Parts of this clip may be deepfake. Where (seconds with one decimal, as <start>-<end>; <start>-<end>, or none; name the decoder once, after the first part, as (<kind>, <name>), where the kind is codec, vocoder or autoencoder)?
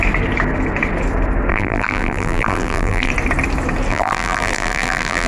1.5-3.1 (vocoder, BigVGAN v2); 3.9-5.3